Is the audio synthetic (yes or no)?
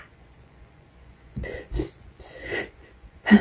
yes